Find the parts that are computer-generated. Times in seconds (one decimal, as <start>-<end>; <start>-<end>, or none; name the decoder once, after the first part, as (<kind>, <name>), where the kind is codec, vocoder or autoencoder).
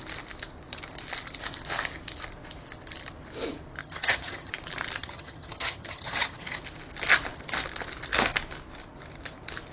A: 3.8-4.5 (vocoder, HiFi-GAN); 5.0-6.6